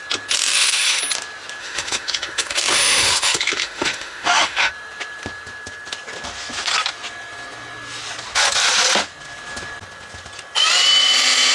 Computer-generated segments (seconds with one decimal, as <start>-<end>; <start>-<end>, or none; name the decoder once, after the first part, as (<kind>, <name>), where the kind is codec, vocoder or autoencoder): 0.5-1.0 (autoencoder, DAC-VAE); 1.6-4.7